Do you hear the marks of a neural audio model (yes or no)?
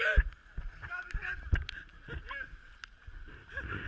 no